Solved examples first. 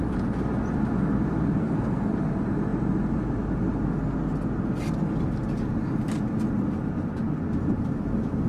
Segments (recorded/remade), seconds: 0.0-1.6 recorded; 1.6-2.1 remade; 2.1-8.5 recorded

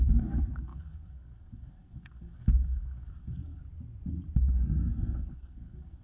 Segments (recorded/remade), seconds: 0.0-3.6 remade; 3.6-4.9 recorded; 4.9-6.0 remade

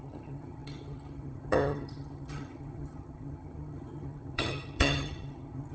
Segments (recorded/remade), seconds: 0.0-5.7 remade

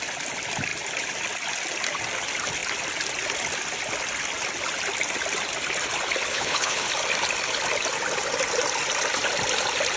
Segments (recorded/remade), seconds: 0.0-6.3 recorded; 6.3-6.9 remade; 6.9-10.0 recorded

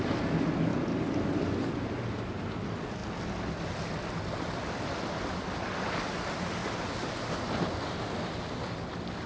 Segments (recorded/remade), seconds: 0.0-9.3 recorded

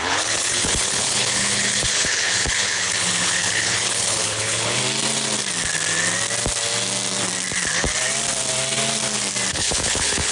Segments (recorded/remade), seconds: 0.0-4.8 remade; 4.8-9.5 recorded; 9.5-10.3 remade

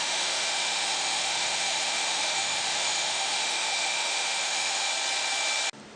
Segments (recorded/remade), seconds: 0.0-4.9 remade; 4.9-6.0 recorded

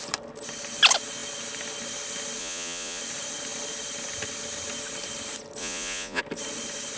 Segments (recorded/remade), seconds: 0.0-2.4 recorded; 2.4-3.0 remade; 3.0-5.6 recorded; 5.6-6.2 remade; 6.2-7.0 recorded